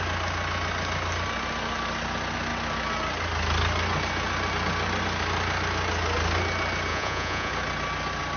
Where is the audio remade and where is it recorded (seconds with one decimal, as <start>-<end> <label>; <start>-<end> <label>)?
0.0-6.9 recorded; 6.9-7.5 remade; 7.5-8.4 recorded